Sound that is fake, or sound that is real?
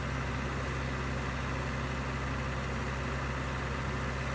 real